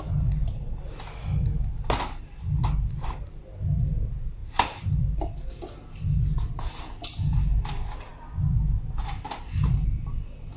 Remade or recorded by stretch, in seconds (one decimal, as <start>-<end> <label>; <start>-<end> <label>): 0.0-10.6 recorded